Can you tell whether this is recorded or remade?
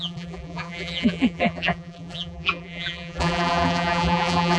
remade